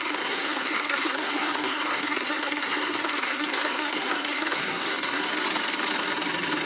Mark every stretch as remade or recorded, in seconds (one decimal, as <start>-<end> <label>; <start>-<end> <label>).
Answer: 0.0-5.3 remade; 5.3-6.7 recorded